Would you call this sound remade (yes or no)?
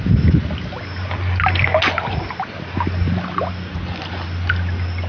no